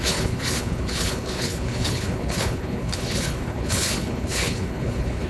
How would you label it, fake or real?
fake